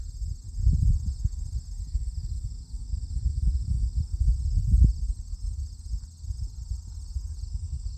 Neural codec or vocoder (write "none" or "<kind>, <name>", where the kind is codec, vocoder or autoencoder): none